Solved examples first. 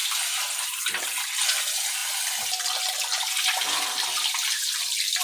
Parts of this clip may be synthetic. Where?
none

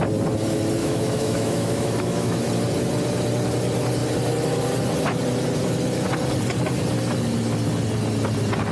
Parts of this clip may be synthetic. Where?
0.8-2.5 (autoencoder, DAC-VAE)

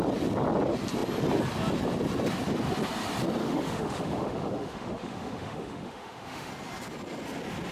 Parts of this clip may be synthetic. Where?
3.4-6.5 (autoencoder, DAC-VAE)

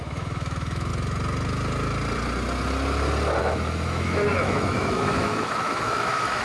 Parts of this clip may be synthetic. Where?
0.0-0.9 (autoencoder, DAC-VAE); 3.4-6.4

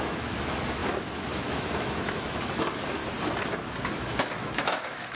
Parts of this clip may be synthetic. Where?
0.0-3.0 (autoencoder, DAC-VAE); 4.0-5.1

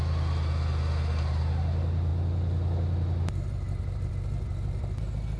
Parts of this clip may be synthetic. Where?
none